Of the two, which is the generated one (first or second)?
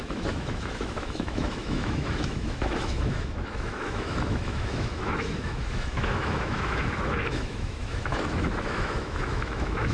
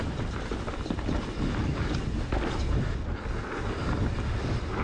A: first